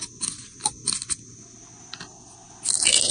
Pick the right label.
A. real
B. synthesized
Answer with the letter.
A